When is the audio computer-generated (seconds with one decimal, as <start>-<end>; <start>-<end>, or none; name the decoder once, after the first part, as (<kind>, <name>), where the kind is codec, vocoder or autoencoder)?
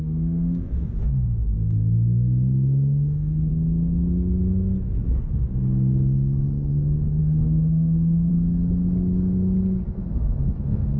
0.0-3.5 (autoencoder, DAC-VAE); 7.2-8.3; 10.6-11.0